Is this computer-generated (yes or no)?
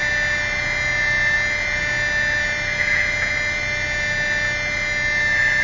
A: no